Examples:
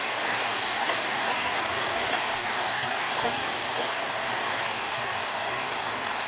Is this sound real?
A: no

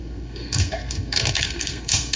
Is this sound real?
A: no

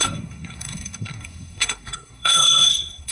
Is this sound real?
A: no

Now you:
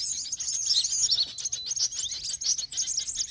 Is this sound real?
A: yes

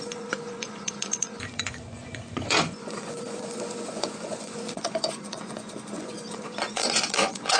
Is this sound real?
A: no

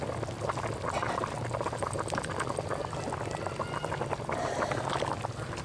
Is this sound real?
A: yes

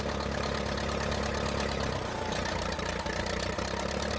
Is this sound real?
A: yes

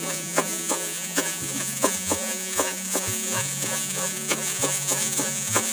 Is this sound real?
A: no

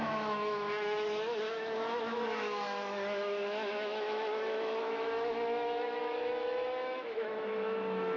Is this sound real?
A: no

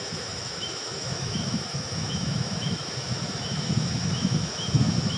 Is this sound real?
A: no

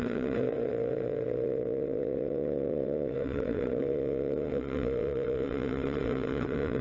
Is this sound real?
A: no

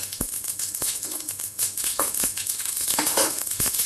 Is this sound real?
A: no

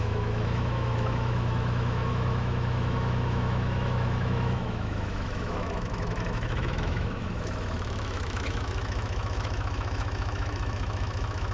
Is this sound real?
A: no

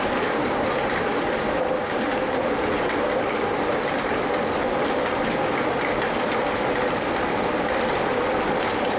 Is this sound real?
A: yes